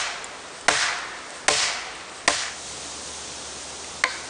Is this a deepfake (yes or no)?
no